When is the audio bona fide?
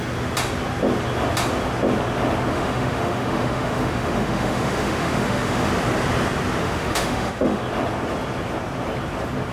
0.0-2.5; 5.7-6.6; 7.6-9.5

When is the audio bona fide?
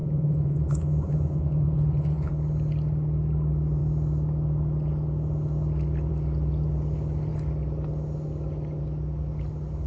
2.3-9.9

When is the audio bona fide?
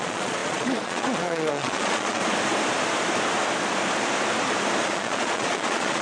2.2-4.8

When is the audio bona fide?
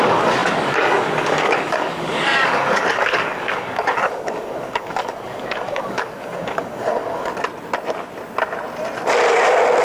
7.3-9.8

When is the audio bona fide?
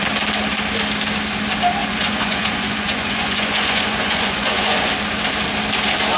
0.0-1.8; 4.9-6.2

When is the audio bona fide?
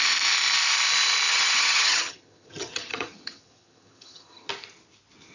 0.0-1.3; 4.5-5.3